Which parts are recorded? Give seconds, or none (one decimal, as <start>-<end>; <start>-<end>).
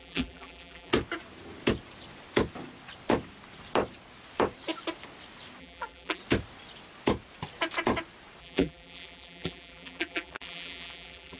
0.9-5.6; 6.2-8.4